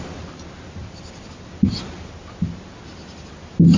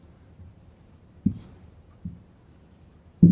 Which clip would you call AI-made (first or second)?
second